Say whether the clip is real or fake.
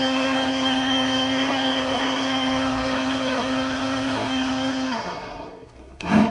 fake